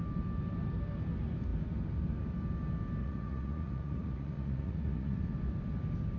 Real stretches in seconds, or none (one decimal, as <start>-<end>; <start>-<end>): 0.0-3.0; 5.2-6.2